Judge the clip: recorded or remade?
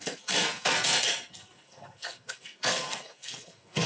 remade